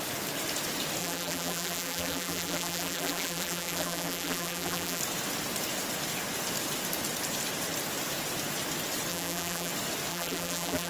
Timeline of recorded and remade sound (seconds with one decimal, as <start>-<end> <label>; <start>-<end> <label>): 0.0-1.0 recorded; 1.0-5.0 remade; 5.0-9.1 recorded; 9.1-9.7 remade; 9.7-10.1 recorded; 10.1-10.9 remade